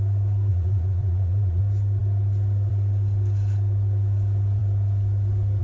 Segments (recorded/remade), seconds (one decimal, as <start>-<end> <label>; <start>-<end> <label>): 0.0-0.5 recorded; 0.5-1.6 remade; 1.6-5.6 recorded